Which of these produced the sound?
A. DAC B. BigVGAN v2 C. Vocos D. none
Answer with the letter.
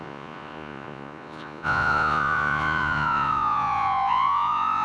C